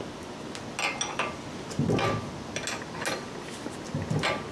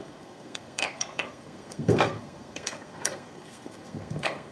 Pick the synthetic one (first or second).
second